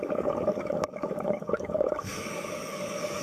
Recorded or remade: remade